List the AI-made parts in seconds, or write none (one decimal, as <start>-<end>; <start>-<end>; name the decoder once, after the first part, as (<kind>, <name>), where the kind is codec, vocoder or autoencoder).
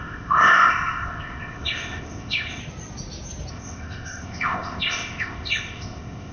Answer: 0.0-2.6 (codec, ZipCodec); 3.5-6.3